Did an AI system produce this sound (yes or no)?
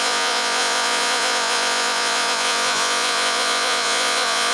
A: yes